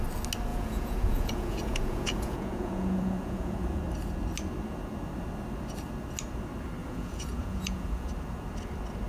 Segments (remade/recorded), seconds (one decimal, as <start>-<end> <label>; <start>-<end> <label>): 0.0-0.5 recorded; 0.5-3.8 remade; 3.8-6.8 recorded; 6.8-8.1 remade; 8.1-9.1 recorded